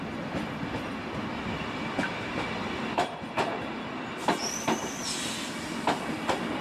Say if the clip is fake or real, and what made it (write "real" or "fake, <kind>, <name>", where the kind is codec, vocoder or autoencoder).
real